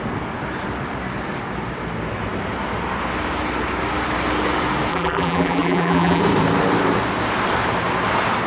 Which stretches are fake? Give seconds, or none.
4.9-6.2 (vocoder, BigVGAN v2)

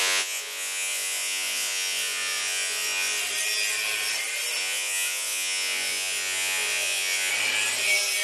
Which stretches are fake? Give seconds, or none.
0.0-3.2 (vocoder, Vocos); 4.6-7.3

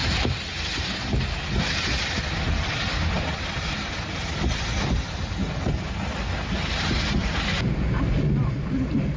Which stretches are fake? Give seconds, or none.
none

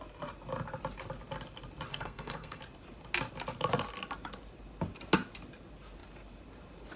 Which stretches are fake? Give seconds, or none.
1.9-2.6 (codec, SNAC)

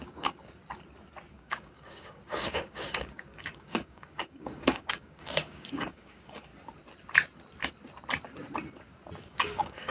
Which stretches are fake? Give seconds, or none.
0.0-0.6 (codec, DAC); 1.3-6.5; 9.2-9.9

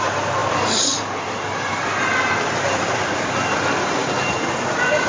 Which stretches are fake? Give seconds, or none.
0.0-5.1 (vocoder, BigVGAN v2)

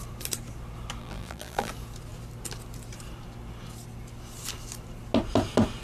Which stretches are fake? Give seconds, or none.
1.0-1.7 (vocoder, BigVGAN v2)